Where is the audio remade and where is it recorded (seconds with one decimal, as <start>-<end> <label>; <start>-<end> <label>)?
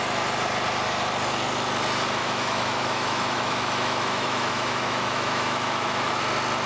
0.0-2.2 recorded; 2.2-6.2 remade; 6.2-6.7 recorded